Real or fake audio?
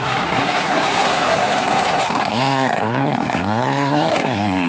fake